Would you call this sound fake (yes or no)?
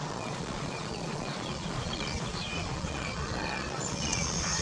yes